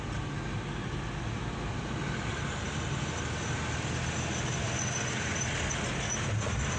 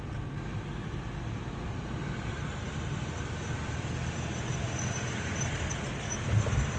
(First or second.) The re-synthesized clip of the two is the second